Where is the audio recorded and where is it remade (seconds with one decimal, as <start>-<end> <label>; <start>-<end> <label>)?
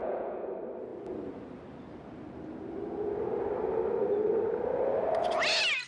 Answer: 0.0-0.5 remade; 0.5-5.9 recorded